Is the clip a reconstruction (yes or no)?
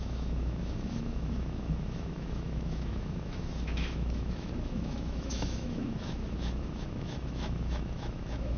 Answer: yes